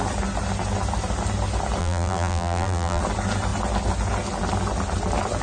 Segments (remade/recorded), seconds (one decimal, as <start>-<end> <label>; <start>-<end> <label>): 0.0-1.8 recorded; 1.8-3.0 remade; 3.0-5.4 recorded